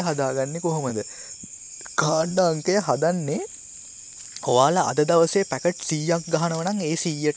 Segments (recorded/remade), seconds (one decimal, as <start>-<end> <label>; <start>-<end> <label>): 0.0-0.9 recorded; 0.9-2.3 remade; 2.3-7.4 recorded